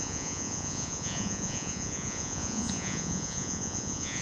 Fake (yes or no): yes